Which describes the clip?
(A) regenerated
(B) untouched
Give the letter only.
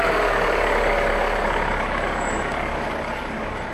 A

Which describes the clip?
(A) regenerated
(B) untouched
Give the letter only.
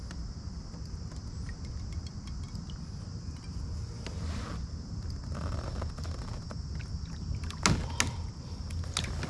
B